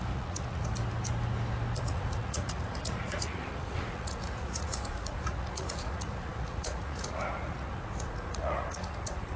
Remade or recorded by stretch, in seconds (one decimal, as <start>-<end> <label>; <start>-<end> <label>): 0.0-0.7 remade; 0.7-1.8 recorded; 1.8-9.4 remade

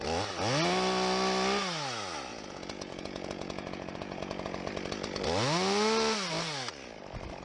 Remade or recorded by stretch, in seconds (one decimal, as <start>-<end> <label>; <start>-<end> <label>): 0.0-2.3 recorded; 2.3-4.6 remade; 4.6-7.4 recorded